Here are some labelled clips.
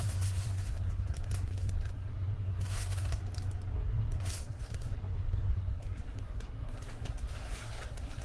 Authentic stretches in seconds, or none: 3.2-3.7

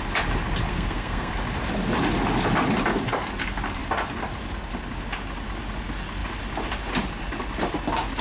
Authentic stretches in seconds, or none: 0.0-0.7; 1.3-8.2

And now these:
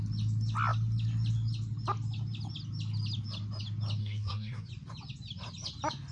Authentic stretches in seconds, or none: 0.0-4.0; 4.7-6.1